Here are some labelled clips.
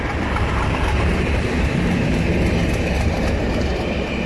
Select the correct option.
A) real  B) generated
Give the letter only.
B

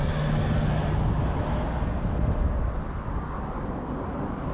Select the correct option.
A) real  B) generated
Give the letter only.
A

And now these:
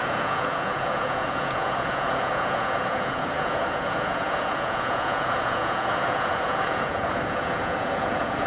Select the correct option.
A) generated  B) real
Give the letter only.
A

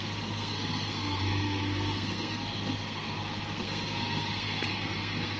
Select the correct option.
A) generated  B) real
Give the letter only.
A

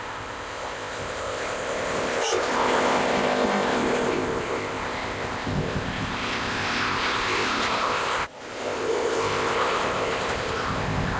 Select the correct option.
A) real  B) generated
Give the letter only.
B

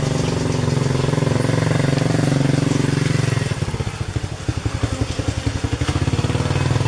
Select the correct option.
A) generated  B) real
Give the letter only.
B